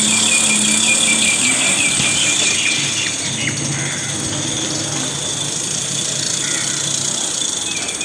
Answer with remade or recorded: recorded